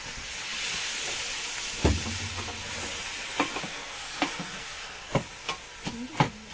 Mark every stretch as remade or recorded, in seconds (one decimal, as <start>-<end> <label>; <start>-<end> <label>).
0.0-3.7 recorded; 3.7-5.2 remade; 5.2-6.5 recorded